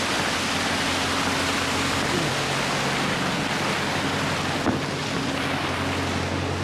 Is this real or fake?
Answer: real